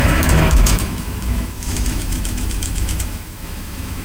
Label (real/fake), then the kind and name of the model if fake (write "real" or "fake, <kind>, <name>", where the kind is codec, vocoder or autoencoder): fake, autoencoder, DAC-VAE